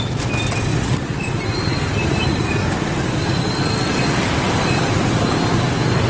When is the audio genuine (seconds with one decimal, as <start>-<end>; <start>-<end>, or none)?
0.0-0.7; 1.3-6.1